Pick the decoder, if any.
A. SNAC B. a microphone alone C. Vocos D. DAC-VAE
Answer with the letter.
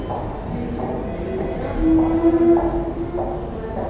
B